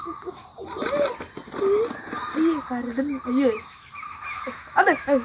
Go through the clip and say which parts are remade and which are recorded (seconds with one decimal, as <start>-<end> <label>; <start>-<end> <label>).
0.0-0.5 remade; 0.5-3.6 recorded; 3.6-5.2 remade